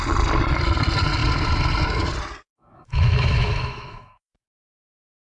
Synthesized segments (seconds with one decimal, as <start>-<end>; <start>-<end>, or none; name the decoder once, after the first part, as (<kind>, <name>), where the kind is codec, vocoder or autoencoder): 2.5-4.3 (autoencoder, DAC-VAE)